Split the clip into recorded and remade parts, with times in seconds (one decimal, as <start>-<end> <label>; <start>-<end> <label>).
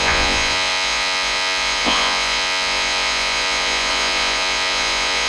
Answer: 0.0-5.3 remade